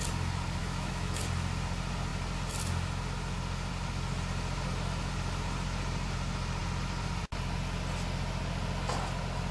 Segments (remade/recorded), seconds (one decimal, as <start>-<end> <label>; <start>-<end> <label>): 0.0-0.6 recorded; 0.6-1.2 remade; 1.2-9.5 recorded